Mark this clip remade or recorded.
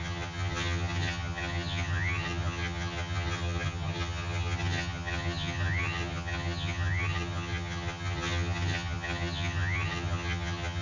remade